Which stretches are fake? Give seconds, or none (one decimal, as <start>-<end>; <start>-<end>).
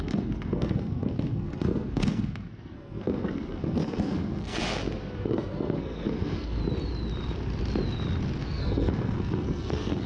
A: 0.0-4.6; 5.2-6.6; 8.4-10.1